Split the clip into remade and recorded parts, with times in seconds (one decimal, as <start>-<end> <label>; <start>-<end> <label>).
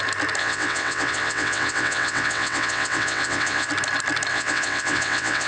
0.0-0.4 recorded; 0.4-3.7 remade; 3.7-4.3 recorded; 4.3-5.5 remade